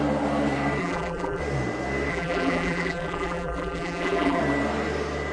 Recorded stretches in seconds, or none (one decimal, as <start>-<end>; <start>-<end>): 0.0-0.8; 1.4-2.1; 4.4-5.3